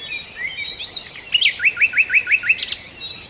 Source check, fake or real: real